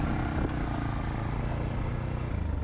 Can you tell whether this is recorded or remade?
recorded